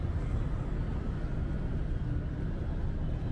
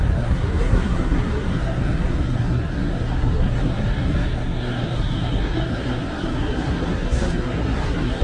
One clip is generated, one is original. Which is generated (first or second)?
second